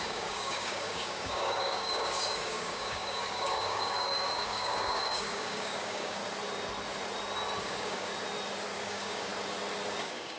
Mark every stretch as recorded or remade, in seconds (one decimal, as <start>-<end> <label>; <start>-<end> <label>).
0.0-6.2 remade; 6.2-7.6 recorded; 7.6-8.1 remade; 8.1-8.8 recorded; 8.8-9.3 remade; 9.3-10.0 recorded; 10.0-10.4 remade